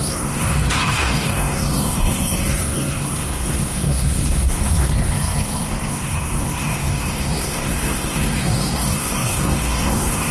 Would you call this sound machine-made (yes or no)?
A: yes